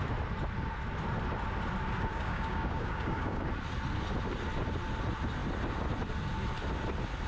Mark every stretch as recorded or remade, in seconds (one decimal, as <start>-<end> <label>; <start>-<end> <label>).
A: 0.0-2.1 recorded; 2.1-3.4 remade; 3.4-7.3 recorded